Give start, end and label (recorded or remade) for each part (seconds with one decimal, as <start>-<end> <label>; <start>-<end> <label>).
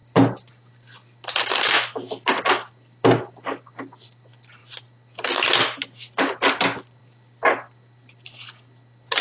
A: 0.0-9.2 recorded